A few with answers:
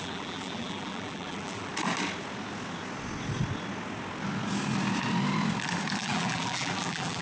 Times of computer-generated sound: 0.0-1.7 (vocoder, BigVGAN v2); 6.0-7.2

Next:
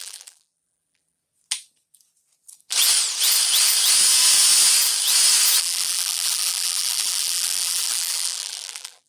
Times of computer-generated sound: 0.0-1.2 (vocoder, BigVGAN v2); 5.6-9.1

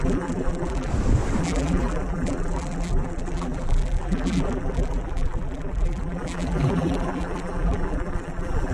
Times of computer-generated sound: 0.0-0.9 (vocoder, BigVGAN v2); 1.4-8.7

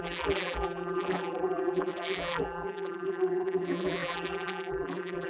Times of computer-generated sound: 0.0-5.3 (vocoder, BigVGAN v2)